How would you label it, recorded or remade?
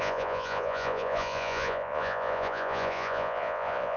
remade